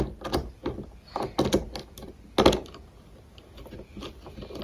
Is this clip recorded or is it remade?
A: recorded